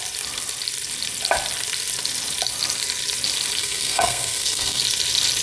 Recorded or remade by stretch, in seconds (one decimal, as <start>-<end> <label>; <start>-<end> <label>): 0.0-3.6 recorded; 3.6-4.8 remade; 4.8-5.4 recorded